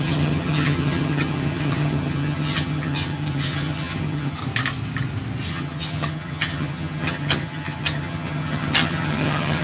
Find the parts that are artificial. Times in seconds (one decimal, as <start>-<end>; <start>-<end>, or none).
0.0-4.4; 5.5-9.6